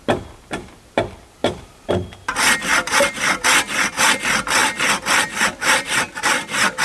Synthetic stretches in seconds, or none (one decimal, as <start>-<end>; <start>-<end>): 1.4-1.9